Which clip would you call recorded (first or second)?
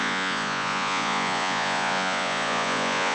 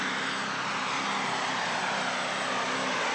second